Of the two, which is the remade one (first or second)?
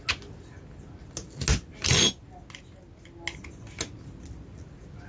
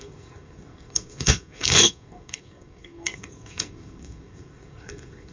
second